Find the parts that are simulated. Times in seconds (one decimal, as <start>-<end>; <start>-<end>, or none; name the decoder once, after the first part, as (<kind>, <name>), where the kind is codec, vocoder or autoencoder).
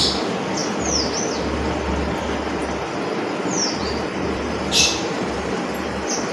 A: 3.8-5.6 (vocoder, BigVGAN v2)